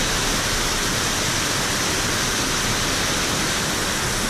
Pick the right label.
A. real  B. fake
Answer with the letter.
A